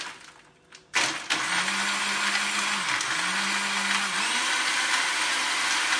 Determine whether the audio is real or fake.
real